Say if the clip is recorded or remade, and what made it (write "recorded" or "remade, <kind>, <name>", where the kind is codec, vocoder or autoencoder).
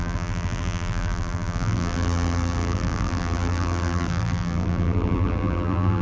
remade, vocoder, BigVGAN v2